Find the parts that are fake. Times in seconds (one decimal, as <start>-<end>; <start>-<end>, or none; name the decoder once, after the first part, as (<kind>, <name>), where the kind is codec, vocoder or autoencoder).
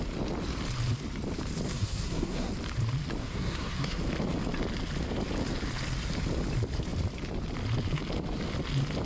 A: 1.7-2.5 (codec, SNAC); 3.2-4.0